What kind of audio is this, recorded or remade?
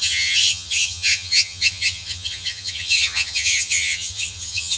remade